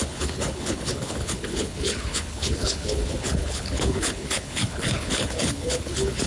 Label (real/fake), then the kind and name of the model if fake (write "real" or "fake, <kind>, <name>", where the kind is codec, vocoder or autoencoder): fake, codec, HILCodec